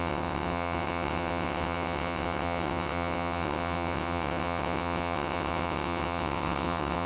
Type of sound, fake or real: fake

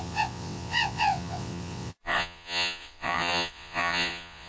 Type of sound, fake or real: fake